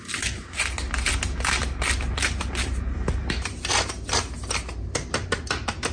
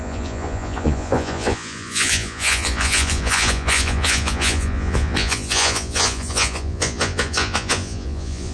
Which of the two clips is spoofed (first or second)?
second